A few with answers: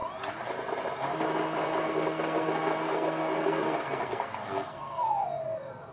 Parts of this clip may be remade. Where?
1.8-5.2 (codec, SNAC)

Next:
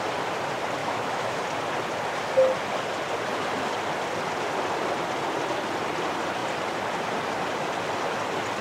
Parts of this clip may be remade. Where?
0.8-1.4 (autoencoder, DAC-VAE)

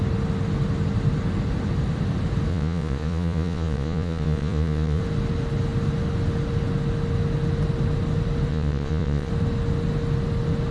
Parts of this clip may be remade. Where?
2.5-5.0 (vocoder, Vocos); 8.5-9.3

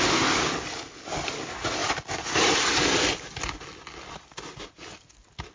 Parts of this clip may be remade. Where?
none

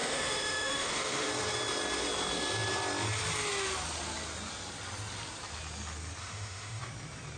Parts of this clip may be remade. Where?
0.0-1.3 (autoencoder, DAC-VAE); 6.2-6.8

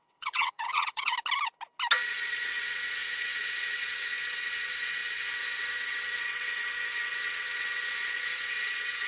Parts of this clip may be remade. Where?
0.0-1.1 (vocoder, WaveNeXt); 2.1-9.1

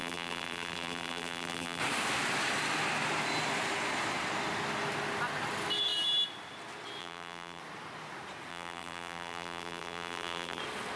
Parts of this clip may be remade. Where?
0.0-1.8 (vocoder, BigVGAN v2); 7.0-7.6; 8.5-10.6

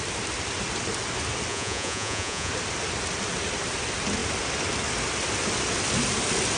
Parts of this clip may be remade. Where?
1.5-2.5 (vocoder, Vocos)